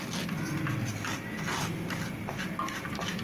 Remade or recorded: recorded